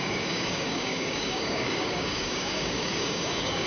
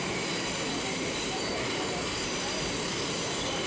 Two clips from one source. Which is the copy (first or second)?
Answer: first